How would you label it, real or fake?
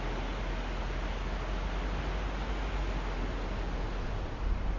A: real